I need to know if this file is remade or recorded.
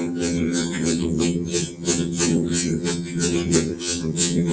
remade